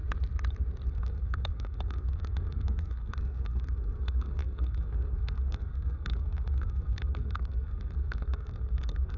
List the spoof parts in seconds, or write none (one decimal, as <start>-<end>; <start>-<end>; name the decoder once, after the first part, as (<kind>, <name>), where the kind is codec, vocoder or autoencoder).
0.9-9.2 (codec, SNAC)

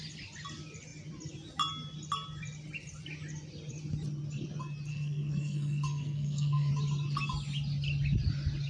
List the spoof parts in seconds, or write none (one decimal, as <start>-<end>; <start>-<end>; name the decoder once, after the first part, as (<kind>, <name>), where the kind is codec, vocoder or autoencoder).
4.9-6.7 (codec, SNAC)